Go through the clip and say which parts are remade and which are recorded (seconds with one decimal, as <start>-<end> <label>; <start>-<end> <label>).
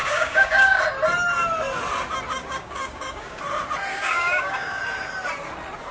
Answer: 0.0-0.8 remade; 0.8-2.4 recorded; 2.4-3.4 remade; 3.4-3.9 recorded; 3.9-4.8 remade; 4.8-5.9 recorded